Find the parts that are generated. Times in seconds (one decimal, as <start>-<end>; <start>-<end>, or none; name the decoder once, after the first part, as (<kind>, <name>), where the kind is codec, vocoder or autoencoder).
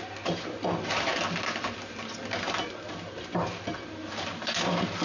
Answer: none